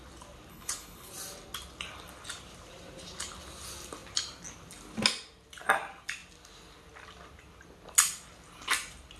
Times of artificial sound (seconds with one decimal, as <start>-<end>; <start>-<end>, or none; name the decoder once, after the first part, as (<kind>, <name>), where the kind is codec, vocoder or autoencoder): 0.5-1.1 (codec, HILCodec)